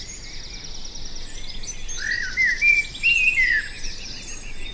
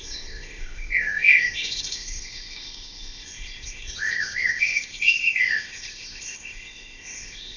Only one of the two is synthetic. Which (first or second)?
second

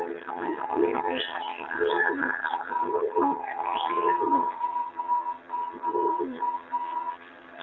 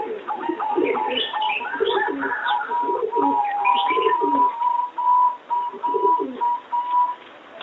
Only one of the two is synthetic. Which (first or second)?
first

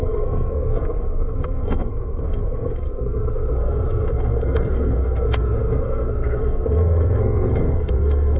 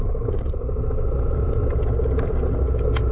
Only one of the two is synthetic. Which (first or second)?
first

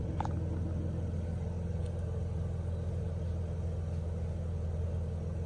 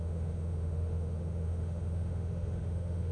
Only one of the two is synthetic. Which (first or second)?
second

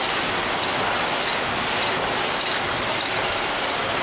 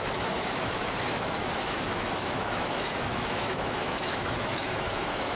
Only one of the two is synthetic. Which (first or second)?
second